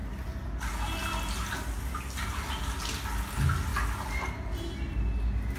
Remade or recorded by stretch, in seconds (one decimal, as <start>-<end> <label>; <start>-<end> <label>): 0.0-5.6 recorded